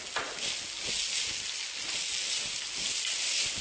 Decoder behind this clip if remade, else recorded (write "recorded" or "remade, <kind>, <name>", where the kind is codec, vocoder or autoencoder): recorded